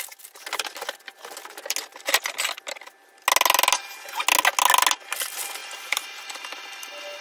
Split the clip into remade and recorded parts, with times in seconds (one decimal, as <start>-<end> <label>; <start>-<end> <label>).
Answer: 0.0-7.2 recorded